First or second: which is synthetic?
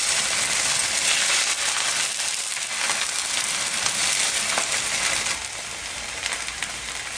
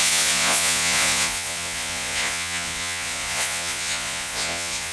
second